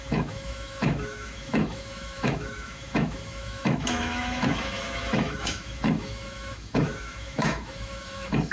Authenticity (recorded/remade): remade